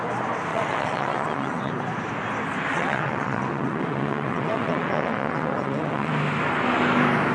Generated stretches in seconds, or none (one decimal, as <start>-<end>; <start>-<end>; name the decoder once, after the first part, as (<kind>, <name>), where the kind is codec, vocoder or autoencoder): 0.5-1.7 (vocoder, WaveNeXt); 2.7-6.1